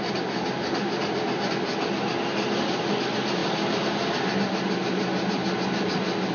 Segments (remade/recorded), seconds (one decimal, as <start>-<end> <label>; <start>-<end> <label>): 0.0-1.7 remade; 1.7-2.8 recorded; 2.8-6.3 remade